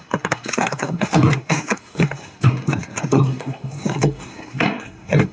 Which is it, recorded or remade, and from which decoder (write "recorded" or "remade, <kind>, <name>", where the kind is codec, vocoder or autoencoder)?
remade, codec, SNAC